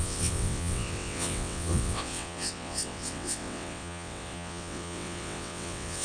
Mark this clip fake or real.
fake